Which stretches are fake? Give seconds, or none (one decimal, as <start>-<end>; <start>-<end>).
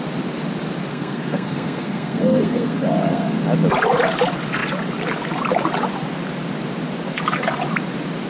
0.9-3.4